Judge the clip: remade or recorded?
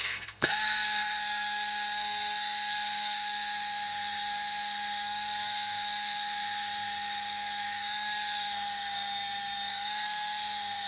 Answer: remade